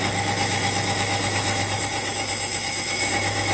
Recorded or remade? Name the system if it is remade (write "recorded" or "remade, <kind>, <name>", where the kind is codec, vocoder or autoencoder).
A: remade, autoencoder, DAC-VAE